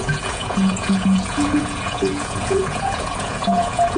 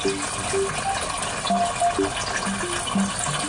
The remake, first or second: first